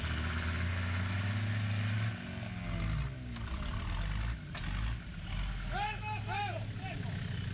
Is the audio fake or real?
real